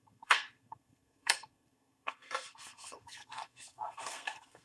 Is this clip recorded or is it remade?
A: remade